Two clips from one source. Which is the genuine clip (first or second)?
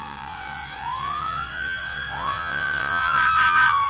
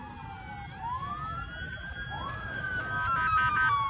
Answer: second